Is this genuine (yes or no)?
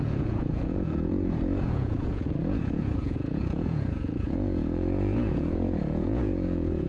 no